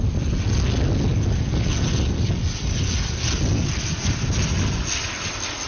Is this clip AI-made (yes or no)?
no